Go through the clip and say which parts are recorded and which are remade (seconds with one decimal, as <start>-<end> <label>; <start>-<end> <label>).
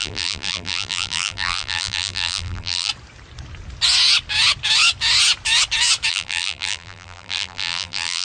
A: 0.0-2.9 remade; 2.9-6.1 recorded; 6.1-8.2 remade